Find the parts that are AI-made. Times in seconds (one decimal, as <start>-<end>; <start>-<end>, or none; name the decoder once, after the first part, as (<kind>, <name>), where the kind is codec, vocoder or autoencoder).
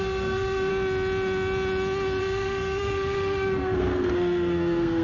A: 0.0-0.7 (codec, SNAC); 2.2-5.0